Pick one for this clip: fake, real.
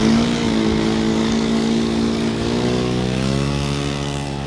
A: fake